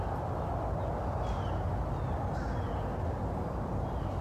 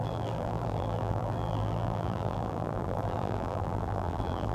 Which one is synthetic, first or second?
second